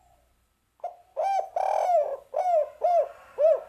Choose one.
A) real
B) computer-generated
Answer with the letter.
A